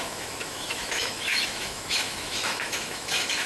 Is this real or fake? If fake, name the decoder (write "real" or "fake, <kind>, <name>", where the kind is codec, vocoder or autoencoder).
fake, autoencoder, DAC-VAE